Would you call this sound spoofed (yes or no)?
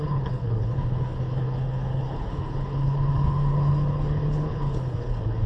yes